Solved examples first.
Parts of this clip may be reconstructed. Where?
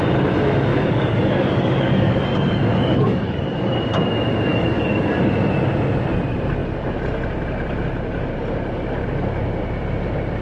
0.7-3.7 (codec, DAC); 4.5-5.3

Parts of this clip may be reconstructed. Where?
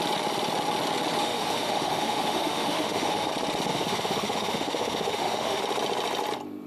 1.2-3.3 (autoencoder, DAC-VAE); 3.7-5.6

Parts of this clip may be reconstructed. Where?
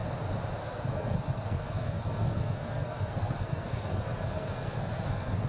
0.6-5.5 (codec, SNAC)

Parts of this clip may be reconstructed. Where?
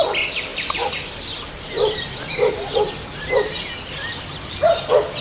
0.5-3.6 (vocoder, BigVGAN v2)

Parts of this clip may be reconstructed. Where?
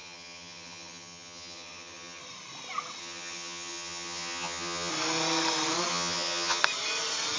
0.0-2.2 (vocoder, HiFi-GAN); 3.0-4.9; 5.9-6.6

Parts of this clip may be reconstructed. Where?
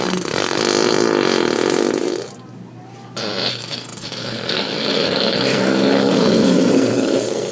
0.0-0.6 (codec, SNAC); 3.5-7.5